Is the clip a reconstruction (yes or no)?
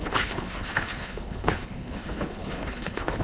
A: yes